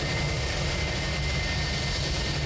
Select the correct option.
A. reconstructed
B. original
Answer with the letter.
B